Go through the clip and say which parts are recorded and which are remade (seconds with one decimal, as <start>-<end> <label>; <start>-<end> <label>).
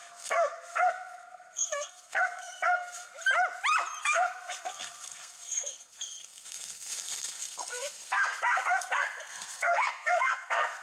0.0-3.1 remade; 3.1-4.0 recorded; 4.0-10.8 remade